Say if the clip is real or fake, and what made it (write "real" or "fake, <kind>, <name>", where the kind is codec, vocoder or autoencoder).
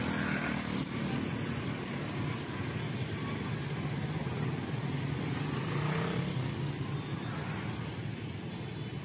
real